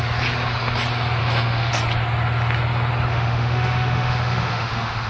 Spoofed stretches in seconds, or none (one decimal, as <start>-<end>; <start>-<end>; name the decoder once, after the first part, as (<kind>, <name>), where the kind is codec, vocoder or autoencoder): 1.2-1.7 (autoencoder, DAC-VAE); 3.1-5.1